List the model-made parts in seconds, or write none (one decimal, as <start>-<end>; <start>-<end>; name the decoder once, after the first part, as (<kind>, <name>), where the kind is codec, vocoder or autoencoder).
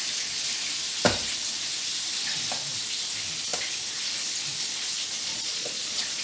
5.3-6.2 (vocoder, Vocos)